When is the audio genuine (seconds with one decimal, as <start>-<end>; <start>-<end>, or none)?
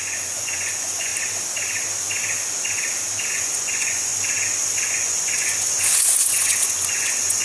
1.1-3.3; 4.1-4.9